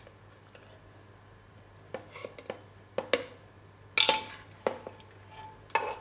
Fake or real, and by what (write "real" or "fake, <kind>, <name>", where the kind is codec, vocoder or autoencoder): real